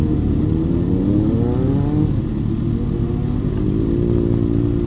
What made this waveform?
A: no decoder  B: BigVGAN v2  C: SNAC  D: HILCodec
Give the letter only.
A